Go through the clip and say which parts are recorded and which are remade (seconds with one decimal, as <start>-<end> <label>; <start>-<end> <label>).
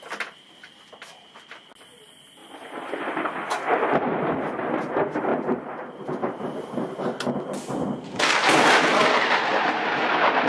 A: 0.0-2.4 recorded; 2.4-3.2 remade; 3.2-3.7 recorded; 3.7-4.8 remade; 4.8-5.3 recorded; 5.3-7.0 remade; 7.0-9.0 recorded; 9.0-10.0 remade; 10.0-10.5 recorded